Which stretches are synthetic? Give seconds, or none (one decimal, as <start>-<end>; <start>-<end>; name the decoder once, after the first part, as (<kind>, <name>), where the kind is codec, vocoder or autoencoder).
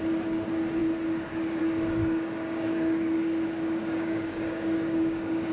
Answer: 2.0-5.5 (codec, DAC)